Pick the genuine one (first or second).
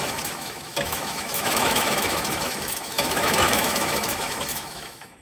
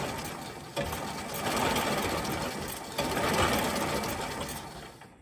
second